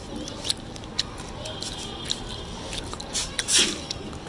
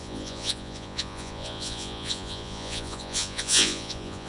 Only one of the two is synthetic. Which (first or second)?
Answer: second